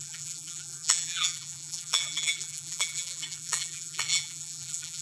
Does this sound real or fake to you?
fake